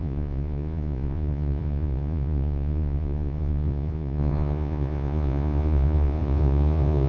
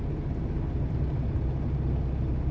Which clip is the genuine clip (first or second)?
second